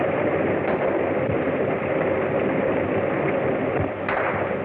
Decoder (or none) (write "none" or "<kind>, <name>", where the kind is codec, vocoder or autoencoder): none